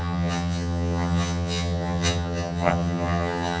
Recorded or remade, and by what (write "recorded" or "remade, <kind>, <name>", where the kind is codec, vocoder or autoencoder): remade, vocoder, HiFi-GAN